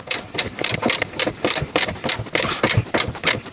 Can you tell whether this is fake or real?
real